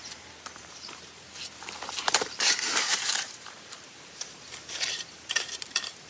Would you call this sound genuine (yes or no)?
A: no